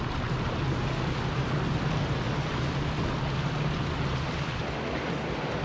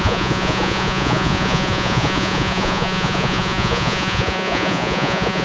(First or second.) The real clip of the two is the first